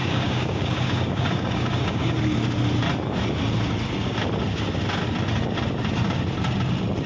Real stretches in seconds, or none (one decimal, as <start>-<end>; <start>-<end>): 2.2-7.1